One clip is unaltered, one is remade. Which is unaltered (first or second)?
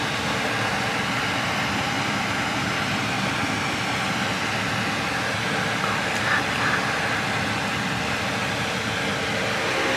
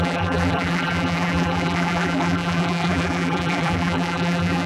first